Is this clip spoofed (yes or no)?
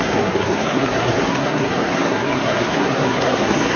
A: yes